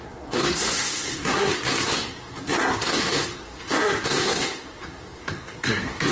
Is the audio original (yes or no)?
no